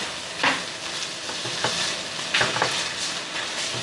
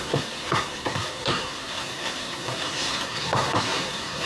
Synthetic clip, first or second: second